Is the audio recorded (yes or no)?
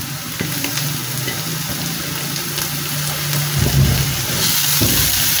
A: yes